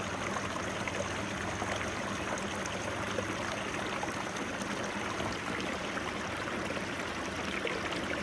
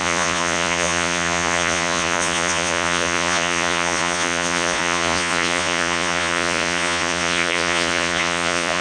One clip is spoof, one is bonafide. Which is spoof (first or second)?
second